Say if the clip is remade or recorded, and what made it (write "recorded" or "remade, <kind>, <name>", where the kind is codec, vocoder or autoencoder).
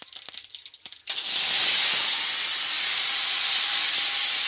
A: recorded